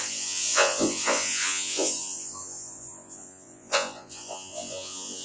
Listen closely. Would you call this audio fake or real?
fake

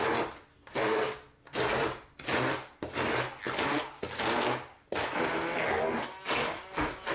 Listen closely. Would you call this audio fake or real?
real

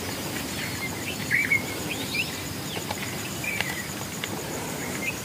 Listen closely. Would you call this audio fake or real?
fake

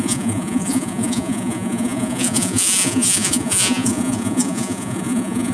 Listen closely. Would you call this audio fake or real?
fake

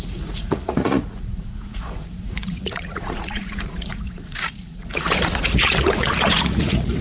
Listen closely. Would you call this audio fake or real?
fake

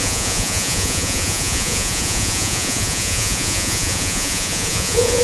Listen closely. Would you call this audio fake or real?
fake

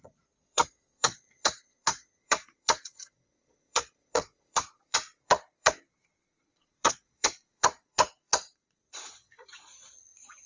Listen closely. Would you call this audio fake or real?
fake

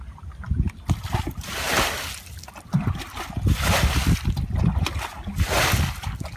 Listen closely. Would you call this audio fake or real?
real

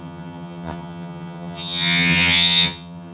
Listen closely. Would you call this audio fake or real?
fake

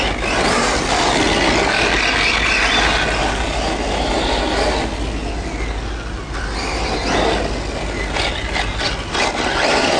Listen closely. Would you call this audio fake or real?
real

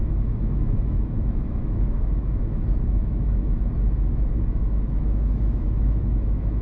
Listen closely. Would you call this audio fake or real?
fake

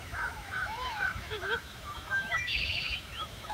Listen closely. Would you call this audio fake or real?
fake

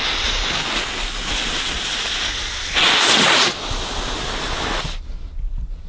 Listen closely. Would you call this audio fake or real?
real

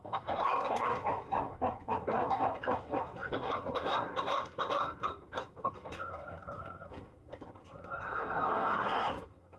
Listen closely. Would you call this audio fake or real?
fake